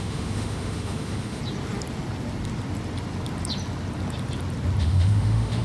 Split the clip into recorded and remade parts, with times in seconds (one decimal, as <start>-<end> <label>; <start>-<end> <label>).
0.0-1.4 remade; 1.4-4.8 recorded; 4.8-5.6 remade